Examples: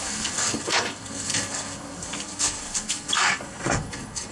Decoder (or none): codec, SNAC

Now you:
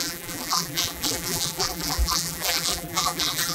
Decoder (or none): vocoder, BigVGAN v2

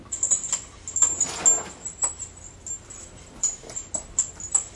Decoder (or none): none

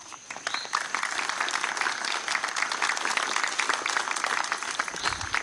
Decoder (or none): none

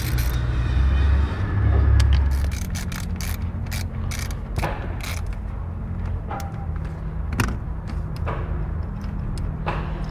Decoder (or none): none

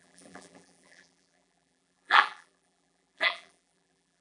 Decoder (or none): vocoder, BigVGAN v2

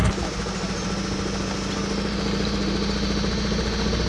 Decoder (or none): none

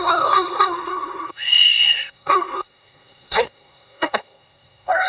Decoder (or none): codec, SNAC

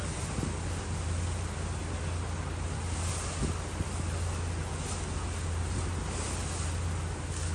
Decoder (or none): none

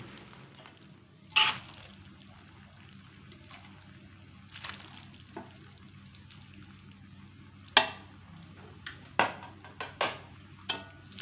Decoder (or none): none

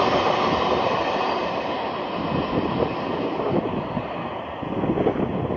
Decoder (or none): none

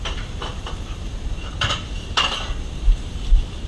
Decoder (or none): vocoder, BigVGAN v2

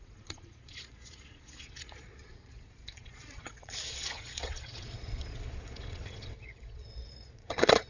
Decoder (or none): vocoder, Vocos